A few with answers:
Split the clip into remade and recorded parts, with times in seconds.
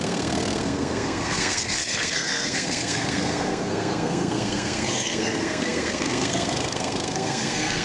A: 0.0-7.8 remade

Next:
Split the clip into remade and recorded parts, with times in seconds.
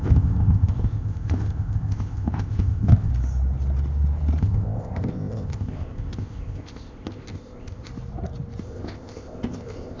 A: 0.0-3.1 remade; 3.1-4.4 recorded; 4.4-7.9 remade; 7.9-8.6 recorded; 8.6-10.0 remade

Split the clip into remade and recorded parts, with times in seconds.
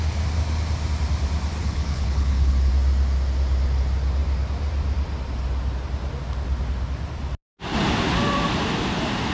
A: 0.0-1.6 recorded; 1.6-2.7 remade; 2.7-9.3 recorded